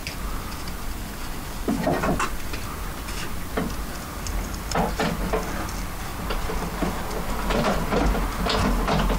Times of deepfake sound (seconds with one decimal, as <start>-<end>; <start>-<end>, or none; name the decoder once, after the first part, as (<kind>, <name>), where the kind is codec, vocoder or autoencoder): 0.0-1.7 (vocoder, BigVGAN v2); 6.1-6.8